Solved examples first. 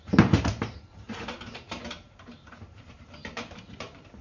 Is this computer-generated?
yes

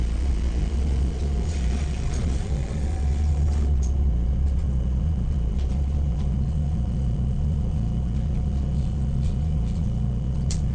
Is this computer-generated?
yes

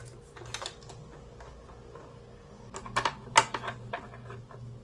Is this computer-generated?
no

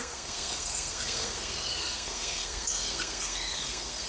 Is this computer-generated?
yes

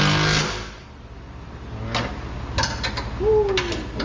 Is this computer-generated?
no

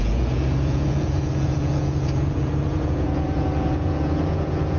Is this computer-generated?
yes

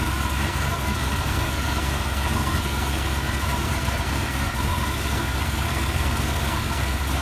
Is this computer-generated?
yes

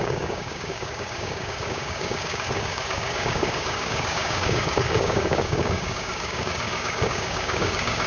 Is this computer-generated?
yes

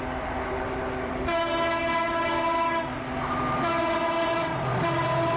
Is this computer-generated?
no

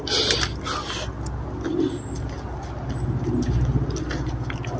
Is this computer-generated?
no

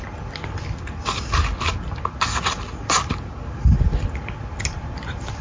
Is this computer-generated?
no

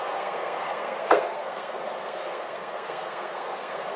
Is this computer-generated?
yes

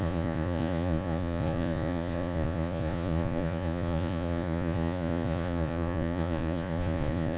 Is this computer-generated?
yes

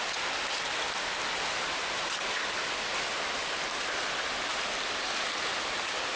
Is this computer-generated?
no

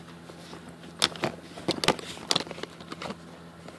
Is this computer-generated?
no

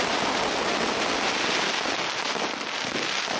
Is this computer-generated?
no